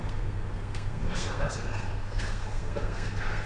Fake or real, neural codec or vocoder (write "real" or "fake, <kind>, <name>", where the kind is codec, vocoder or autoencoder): fake, codec, SNAC